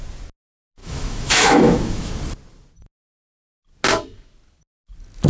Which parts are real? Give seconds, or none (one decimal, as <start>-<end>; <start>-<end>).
0.0-0.8; 2.1-5.3